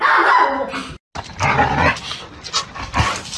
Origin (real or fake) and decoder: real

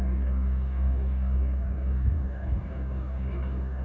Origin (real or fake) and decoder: fake, codec, DAC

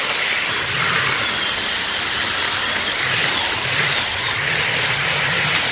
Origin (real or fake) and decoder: real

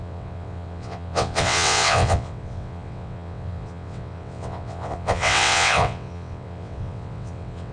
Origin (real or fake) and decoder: fake, vocoder, WaveNeXt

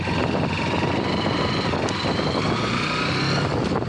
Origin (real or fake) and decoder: real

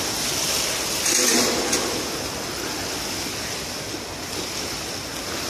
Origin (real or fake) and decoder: real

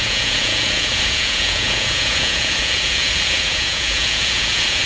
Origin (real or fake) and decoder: fake, vocoder, Vocos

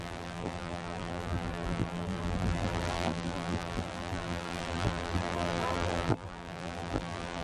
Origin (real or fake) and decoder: fake, vocoder, BigVGAN v2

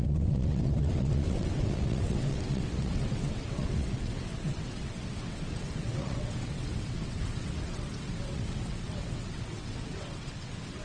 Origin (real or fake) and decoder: fake, vocoder, WaveNeXt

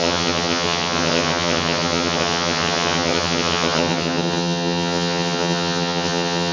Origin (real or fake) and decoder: fake, vocoder, HiFi-GAN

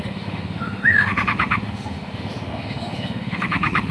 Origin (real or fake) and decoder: fake, autoencoder, DAC-VAE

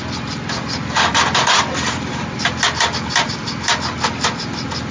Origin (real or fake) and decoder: real